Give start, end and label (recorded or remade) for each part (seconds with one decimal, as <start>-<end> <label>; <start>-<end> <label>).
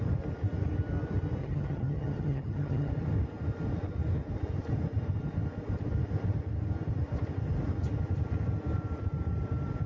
0.0-1.4 recorded; 1.4-2.9 remade; 2.9-9.9 recorded